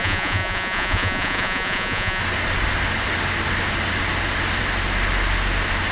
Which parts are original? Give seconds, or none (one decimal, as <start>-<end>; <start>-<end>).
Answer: 2.2-5.9